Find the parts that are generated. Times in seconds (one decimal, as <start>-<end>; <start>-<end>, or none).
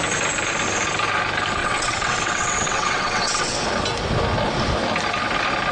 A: 1.6-3.6